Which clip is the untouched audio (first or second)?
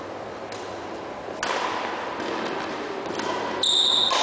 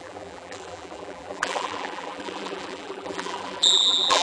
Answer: first